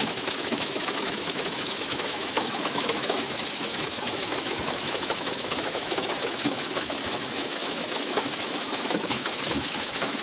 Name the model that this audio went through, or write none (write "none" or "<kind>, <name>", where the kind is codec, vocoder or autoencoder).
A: autoencoder, DAC-VAE